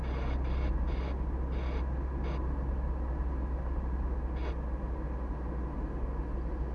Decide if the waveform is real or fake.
real